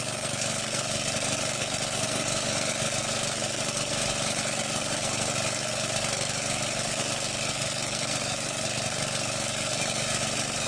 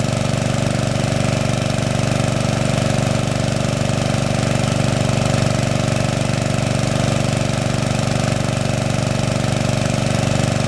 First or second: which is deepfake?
first